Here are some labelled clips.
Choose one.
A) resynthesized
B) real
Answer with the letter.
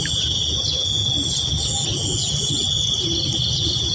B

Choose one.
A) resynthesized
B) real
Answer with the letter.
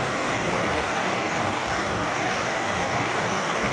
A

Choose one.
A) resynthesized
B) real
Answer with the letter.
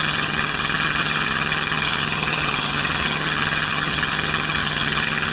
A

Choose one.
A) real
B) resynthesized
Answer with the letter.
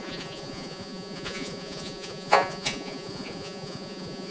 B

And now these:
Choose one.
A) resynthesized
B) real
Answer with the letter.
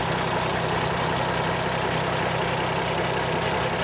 B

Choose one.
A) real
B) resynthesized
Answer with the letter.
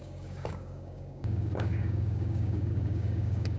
B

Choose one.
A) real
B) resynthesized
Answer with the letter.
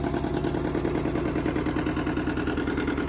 A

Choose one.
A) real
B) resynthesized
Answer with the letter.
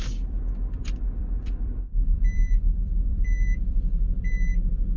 B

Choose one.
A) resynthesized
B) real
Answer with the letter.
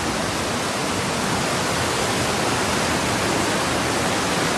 B